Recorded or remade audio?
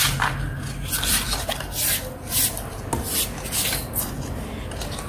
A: recorded